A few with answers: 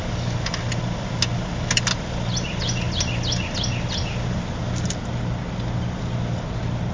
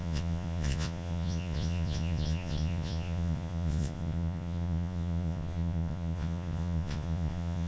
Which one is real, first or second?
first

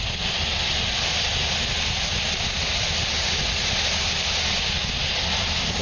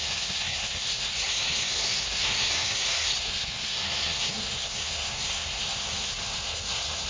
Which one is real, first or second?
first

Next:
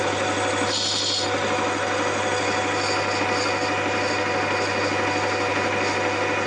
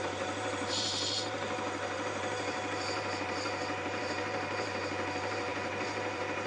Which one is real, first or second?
first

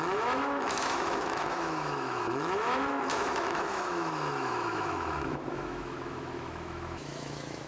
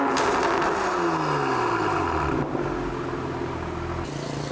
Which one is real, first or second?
second